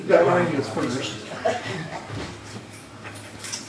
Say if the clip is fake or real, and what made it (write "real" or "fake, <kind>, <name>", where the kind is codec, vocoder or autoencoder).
fake, codec, DAC